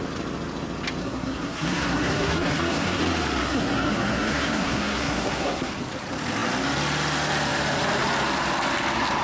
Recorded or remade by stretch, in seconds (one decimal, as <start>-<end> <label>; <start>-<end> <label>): 0.0-1.0 recorded; 1.0-3.0 remade; 3.0-3.4 recorded; 3.4-5.7 remade; 5.7-9.2 recorded